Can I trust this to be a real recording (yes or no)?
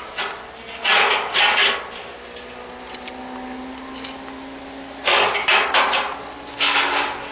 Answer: yes